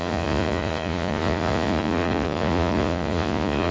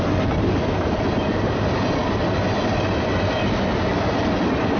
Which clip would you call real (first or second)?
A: second